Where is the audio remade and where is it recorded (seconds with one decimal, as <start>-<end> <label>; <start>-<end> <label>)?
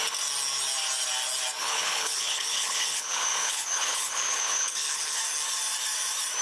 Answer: 0.0-1.6 recorded; 1.6-5.2 remade; 5.2-6.4 recorded